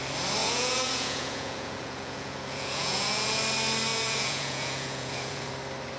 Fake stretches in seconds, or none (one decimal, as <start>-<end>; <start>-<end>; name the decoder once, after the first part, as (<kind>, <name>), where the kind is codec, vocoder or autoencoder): 0.4-3.4 (vocoder, Vocos); 3.9-5.5

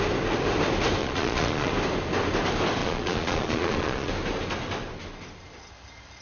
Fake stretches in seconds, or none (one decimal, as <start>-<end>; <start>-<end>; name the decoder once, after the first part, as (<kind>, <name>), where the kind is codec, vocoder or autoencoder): 1.0-1.7 (vocoder, Vocos); 2.8-4.1

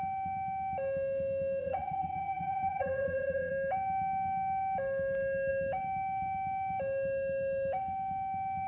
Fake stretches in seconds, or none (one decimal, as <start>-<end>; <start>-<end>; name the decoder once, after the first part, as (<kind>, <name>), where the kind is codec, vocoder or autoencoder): 1.6-3.5 (vocoder, Vocos)